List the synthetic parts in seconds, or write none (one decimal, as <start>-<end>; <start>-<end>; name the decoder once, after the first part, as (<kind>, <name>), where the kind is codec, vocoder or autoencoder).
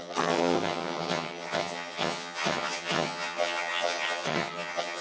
0.0-5.0 (vocoder, HiFi-GAN)